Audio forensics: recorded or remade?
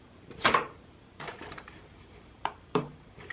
remade